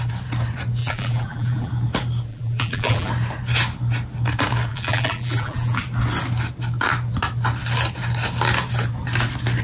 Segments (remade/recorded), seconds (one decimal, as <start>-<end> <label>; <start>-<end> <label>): 0.0-0.8 recorded; 0.8-1.7 remade; 1.7-2.3 recorded; 2.3-3.1 remade; 3.1-4.7 recorded; 4.7-5.8 remade; 5.8-9.6 recorded